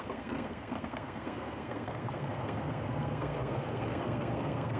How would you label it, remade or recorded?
remade